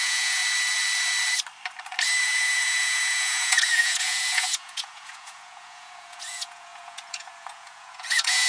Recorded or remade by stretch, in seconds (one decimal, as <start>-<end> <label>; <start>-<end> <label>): 0.0-0.4 remade; 0.4-2.2 recorded; 2.2-8.5 remade